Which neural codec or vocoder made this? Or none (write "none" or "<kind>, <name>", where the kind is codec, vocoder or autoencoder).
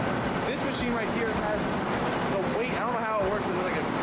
none